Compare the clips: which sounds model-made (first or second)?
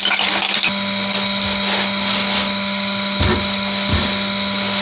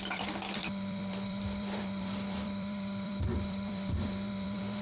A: second